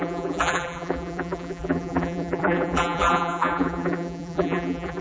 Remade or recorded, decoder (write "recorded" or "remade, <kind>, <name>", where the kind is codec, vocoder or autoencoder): remade, vocoder, BigVGAN v2